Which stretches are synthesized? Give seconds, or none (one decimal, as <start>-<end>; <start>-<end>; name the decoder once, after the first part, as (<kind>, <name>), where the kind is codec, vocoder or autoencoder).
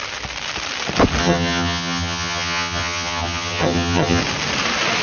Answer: 1.2-4.2 (vocoder, HiFi-GAN)